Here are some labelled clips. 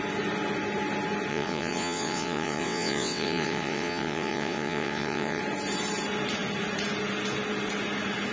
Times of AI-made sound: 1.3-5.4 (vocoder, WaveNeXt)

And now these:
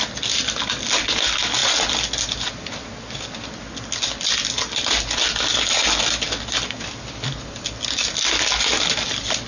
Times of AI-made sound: none

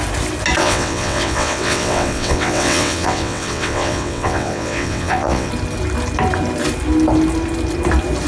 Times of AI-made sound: 0.6-5.5 (vocoder, WaveNeXt)